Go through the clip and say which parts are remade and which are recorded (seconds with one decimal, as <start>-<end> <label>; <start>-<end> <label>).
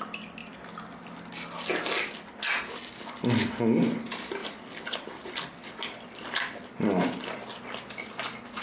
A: 0.0-8.6 recorded